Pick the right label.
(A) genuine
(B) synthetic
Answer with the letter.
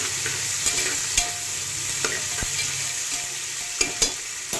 A